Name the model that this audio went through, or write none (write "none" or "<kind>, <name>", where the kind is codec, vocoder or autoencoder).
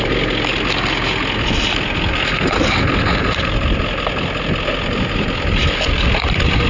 none